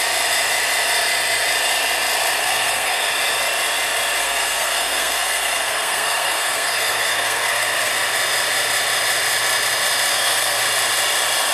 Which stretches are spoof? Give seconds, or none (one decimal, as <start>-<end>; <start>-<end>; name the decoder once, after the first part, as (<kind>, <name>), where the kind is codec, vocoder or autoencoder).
2.4-3.1 (codec, SNAC); 4.2-7.9; 10.1-10.6